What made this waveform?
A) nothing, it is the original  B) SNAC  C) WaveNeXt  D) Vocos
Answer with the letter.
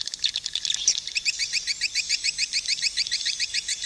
A